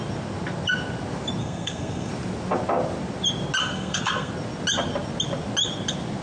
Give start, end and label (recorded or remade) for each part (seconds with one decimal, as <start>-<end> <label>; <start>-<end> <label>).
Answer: 0.0-1.4 recorded; 1.4-2.1 remade; 2.1-3.6 recorded; 3.6-4.3 remade; 4.3-6.2 recorded